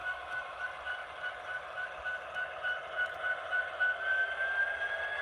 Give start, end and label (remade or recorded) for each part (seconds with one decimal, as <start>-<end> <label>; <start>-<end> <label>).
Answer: 0.0-0.6 remade; 0.6-5.2 recorded